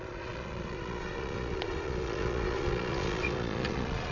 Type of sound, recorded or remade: remade